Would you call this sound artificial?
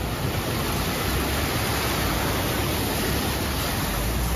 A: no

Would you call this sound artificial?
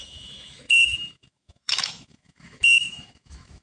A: yes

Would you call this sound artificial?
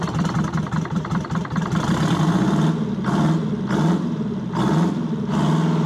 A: no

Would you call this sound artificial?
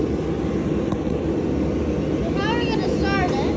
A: no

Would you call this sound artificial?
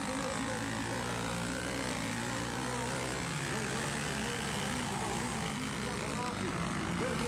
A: no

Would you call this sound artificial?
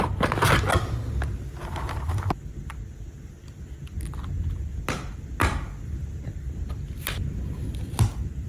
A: no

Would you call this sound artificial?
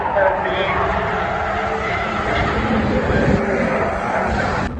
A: no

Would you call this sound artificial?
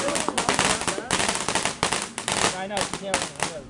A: no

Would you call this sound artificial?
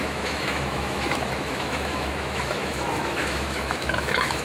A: yes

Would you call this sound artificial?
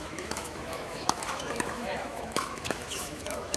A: yes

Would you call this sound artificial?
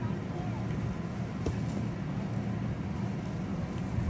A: no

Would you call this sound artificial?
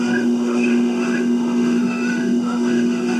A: yes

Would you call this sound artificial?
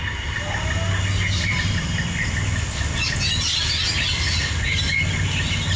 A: no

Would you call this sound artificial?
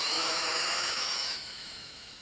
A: yes